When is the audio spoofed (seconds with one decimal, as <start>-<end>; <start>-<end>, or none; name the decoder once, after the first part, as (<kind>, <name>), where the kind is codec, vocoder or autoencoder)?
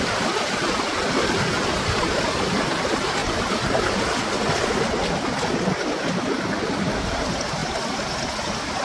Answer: 0.0-3.2 (vocoder, BigVGAN v2); 6.6-7.6; 8.4-8.8